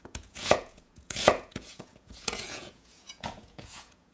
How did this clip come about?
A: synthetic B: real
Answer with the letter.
A